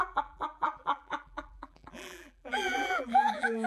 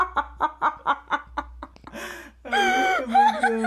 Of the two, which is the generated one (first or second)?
first